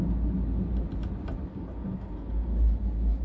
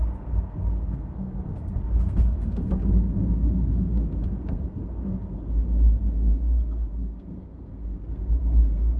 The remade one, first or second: second